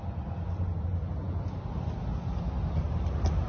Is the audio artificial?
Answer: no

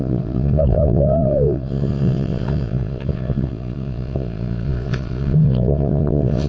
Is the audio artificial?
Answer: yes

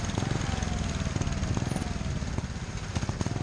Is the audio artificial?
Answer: no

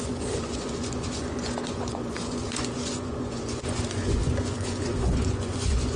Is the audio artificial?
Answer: yes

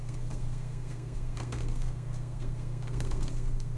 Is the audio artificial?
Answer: yes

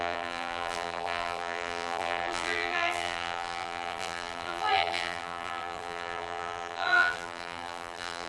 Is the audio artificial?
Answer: yes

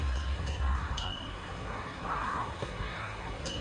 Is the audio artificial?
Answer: yes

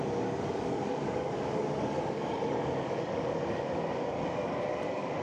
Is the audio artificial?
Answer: yes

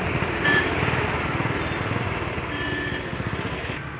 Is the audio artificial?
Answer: no